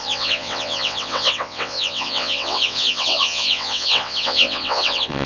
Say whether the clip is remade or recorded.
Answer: remade